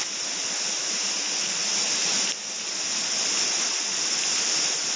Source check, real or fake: real